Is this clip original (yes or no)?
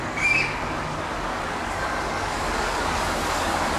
no